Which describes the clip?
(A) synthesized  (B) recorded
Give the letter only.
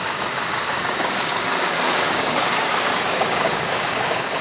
A